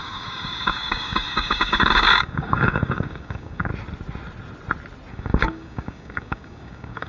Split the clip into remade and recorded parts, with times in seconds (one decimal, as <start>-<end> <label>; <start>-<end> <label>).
0.0-3.7 remade; 3.7-5.1 recorded; 5.1-7.1 remade